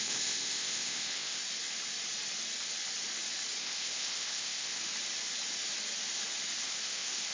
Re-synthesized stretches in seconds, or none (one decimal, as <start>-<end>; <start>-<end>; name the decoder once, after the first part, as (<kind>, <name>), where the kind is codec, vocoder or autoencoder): 0.0-1.4 (codec, ZipCodec); 3.6-4.8; 6.6-7.3